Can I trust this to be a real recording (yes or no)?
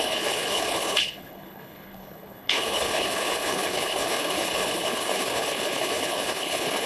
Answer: no